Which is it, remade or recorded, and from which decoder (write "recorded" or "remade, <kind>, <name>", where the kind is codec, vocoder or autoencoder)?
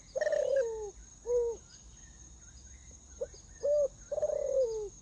recorded